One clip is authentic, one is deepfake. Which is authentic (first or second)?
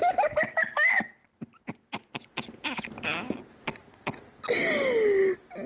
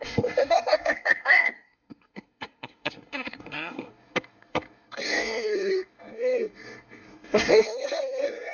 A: first